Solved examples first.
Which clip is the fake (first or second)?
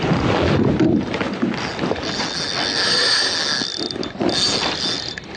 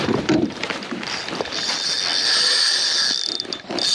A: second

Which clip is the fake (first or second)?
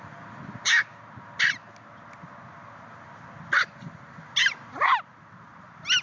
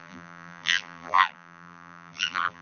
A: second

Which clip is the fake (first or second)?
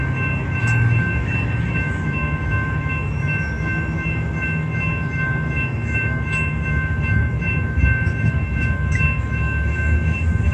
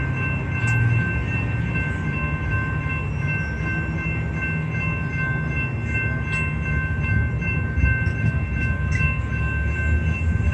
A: first